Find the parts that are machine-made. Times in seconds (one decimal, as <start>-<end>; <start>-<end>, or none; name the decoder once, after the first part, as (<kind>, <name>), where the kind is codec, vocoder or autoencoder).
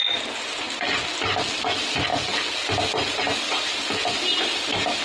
none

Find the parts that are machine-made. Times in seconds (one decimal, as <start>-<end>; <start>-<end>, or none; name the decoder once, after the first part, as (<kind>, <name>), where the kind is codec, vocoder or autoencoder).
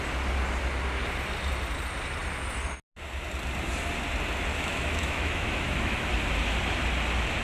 4.5-6.1 (autoencoder, DAC-VAE)